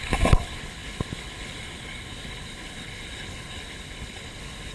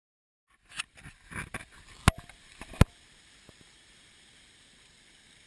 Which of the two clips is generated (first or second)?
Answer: first